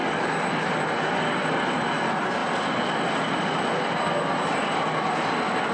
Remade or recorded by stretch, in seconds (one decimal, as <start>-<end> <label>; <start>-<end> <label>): 0.0-5.7 recorded